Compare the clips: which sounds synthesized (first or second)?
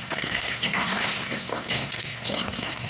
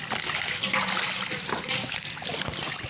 first